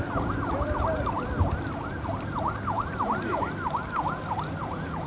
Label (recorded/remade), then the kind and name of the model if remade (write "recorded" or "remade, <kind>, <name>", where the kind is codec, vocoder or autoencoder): recorded